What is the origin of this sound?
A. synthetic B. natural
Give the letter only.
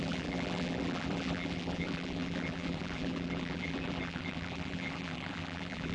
A